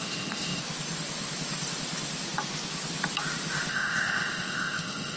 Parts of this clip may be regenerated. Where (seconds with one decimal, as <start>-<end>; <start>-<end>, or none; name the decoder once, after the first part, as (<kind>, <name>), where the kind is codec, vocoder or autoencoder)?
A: 0.0-0.6 (codec, ZipCodec); 3.7-5.2